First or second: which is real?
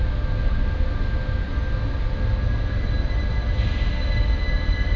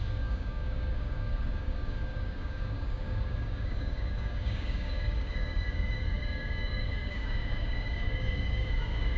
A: first